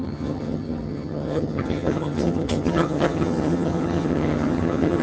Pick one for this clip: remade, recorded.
remade